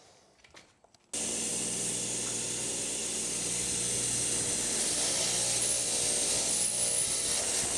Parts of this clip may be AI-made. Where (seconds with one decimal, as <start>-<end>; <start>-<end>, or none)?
none